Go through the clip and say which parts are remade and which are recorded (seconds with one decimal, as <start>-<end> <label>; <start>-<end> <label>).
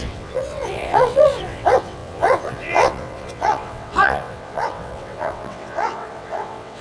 0.0-6.8 remade